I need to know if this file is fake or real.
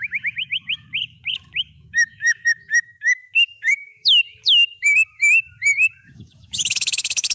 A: fake